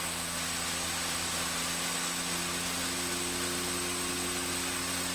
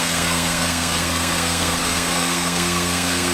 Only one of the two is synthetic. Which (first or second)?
second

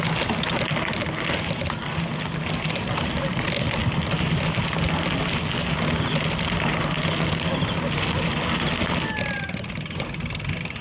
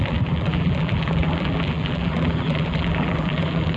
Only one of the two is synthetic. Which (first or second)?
second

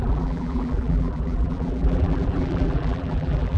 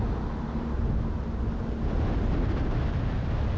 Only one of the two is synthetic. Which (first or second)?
first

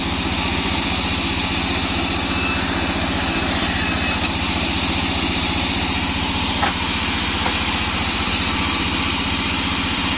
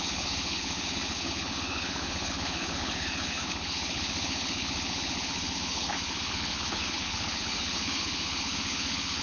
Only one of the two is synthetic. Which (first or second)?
second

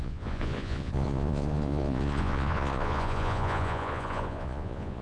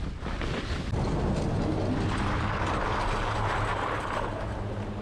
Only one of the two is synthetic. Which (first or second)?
first